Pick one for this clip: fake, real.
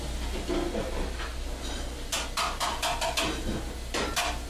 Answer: real